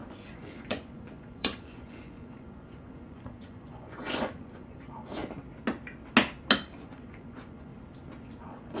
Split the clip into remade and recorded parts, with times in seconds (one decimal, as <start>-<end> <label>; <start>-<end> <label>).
0.0-5.2 remade; 5.2-6.8 recorded; 6.8-7.7 remade; 7.7-8.4 recorded; 8.4-8.8 remade